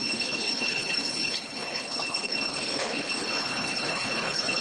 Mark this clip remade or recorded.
remade